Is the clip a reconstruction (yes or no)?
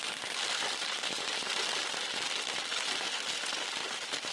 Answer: no